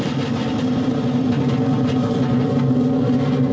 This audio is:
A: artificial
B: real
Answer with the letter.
B